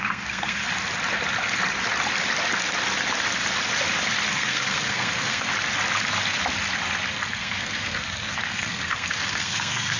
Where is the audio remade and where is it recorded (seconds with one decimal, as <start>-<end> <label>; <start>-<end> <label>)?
0.0-0.6 remade; 0.6-4.3 recorded; 4.3-5.5 remade; 5.5-7.3 recorded; 7.3-10.0 remade